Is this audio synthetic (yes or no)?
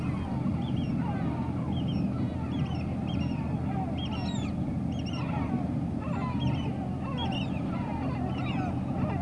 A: no